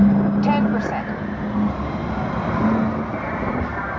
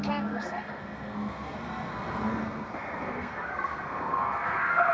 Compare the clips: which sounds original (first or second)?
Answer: first